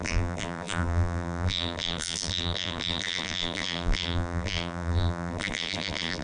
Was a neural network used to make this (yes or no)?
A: yes